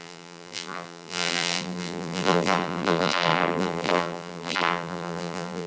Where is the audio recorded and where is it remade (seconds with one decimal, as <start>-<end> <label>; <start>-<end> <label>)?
0.0-5.7 remade